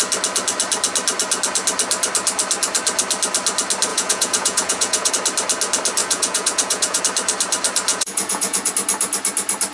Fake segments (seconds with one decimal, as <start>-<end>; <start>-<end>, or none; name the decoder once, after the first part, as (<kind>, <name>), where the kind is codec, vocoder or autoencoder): 3.9-5.1 (vocoder, Vocos); 6.0-7.0; 7.9-8.7